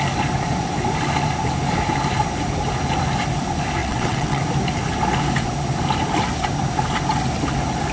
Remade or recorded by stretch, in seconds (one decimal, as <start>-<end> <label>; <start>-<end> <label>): 0.0-3.8 recorded; 3.8-4.4 remade; 4.4-7.9 recorded

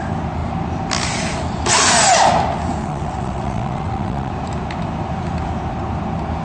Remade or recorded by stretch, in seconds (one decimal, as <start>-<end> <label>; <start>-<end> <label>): 0.0-2.8 recorded; 2.8-4.3 remade; 4.3-6.4 recorded

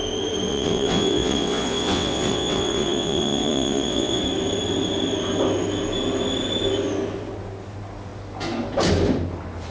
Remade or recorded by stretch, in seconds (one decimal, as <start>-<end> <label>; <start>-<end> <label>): 0.0-0.5 recorded; 0.5-4.2 remade; 4.2-9.7 recorded

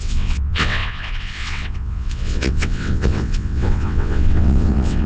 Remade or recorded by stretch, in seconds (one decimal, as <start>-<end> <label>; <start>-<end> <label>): 0.0-5.1 remade

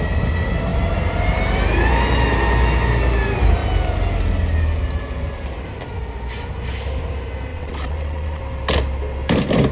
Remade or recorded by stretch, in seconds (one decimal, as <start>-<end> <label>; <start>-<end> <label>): 0.0-7.5 recorded; 7.5-8.4 remade; 8.4-9.7 recorded

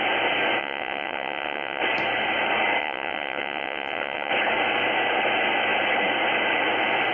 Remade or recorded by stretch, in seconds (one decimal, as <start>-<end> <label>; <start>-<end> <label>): 0.0-0.6 recorded; 0.6-1.8 remade; 1.8-2.8 recorded; 2.8-4.3 remade; 4.3-7.1 recorded